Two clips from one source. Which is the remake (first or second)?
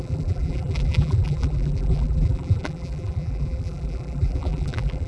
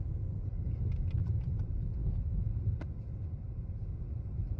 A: first